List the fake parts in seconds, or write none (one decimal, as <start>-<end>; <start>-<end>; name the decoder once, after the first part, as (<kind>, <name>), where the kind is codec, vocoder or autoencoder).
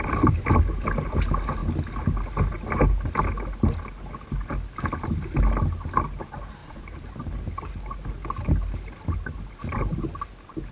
none